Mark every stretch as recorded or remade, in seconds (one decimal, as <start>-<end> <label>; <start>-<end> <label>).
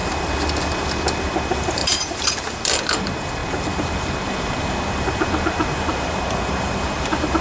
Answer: 0.0-1.2 recorded; 1.2-7.4 remade